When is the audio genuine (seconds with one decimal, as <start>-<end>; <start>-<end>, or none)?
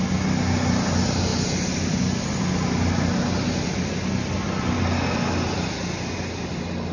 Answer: 0.0-6.9